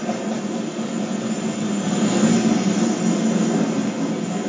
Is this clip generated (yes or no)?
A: no